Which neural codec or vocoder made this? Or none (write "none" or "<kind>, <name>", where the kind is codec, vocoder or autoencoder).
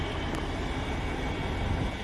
none